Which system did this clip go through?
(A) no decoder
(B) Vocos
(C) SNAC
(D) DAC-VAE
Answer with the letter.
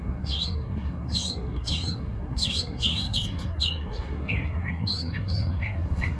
C